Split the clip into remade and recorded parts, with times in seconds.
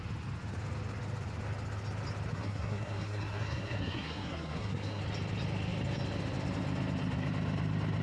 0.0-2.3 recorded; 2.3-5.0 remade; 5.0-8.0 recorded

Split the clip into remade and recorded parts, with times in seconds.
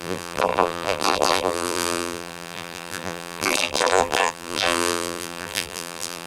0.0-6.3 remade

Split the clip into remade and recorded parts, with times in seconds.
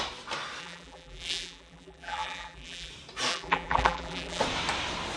0.0-0.6 recorded; 0.6-2.9 remade; 2.9-3.3 recorded; 3.3-4.4 remade; 4.4-5.2 recorded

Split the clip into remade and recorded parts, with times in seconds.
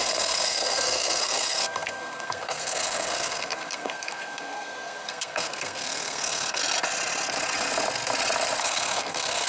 0.0-6.6 remade; 6.6-8.6 recorded; 8.6-9.5 remade